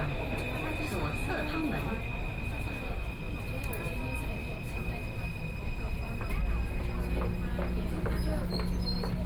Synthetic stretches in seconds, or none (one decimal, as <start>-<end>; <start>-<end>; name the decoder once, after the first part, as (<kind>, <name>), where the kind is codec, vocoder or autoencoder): none